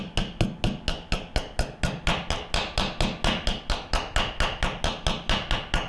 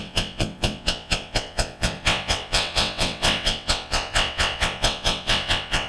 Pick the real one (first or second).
first